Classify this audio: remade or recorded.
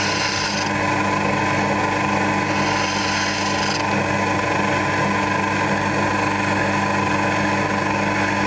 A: recorded